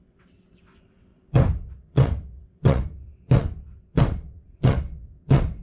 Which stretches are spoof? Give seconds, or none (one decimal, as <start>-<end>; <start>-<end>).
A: 0.0-1.1; 1.7-5.6